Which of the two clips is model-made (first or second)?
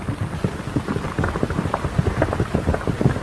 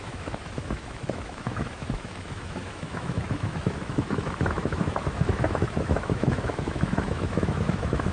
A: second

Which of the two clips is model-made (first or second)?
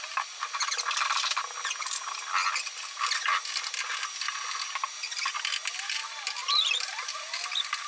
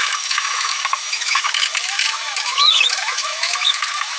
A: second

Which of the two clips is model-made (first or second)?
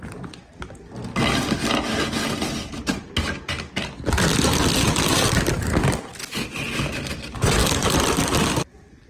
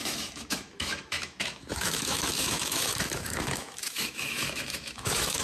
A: second